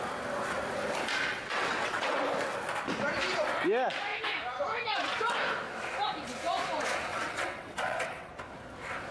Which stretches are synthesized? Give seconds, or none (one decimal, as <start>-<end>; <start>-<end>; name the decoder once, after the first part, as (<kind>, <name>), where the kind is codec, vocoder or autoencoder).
1.3-2.2 (vocoder, WaveNeXt); 7.1-8.3